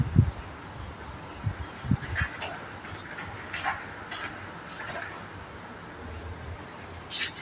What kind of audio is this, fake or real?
real